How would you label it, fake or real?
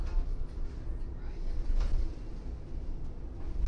real